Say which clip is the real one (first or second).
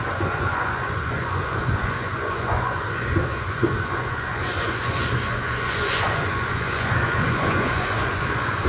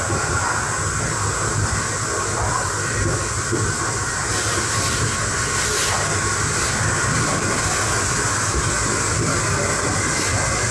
second